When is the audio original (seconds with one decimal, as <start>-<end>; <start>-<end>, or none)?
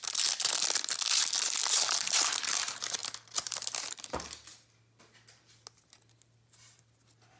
0.0-7.4